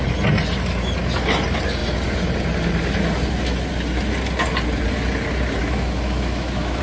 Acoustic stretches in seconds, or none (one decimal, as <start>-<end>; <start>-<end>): 0.0-5.6